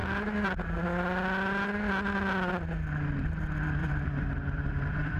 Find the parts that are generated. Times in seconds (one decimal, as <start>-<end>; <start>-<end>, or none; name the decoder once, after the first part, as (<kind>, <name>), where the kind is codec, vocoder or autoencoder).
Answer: 3.8-5.2 (vocoder, BigVGAN v2)